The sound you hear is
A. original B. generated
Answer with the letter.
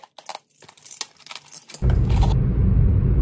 A